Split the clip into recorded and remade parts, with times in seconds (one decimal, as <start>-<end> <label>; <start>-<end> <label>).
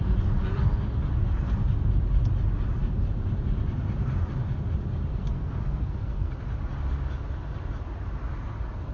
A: 0.0-5.1 recorded; 5.1-6.3 remade; 6.3-8.9 recorded